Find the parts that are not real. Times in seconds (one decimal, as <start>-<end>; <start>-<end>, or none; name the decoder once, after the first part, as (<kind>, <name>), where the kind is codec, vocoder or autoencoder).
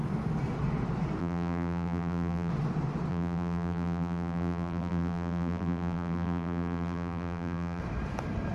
1.2-2.5 (vocoder, BigVGAN v2); 3.1-7.8